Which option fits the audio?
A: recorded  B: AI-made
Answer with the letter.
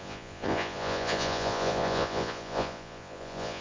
B